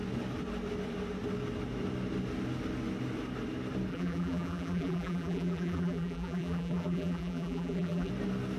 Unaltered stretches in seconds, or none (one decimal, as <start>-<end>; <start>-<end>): 0.0-3.9; 8.1-8.6